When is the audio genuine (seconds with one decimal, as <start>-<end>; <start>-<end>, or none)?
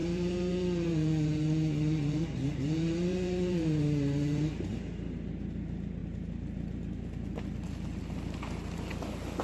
4.8-9.4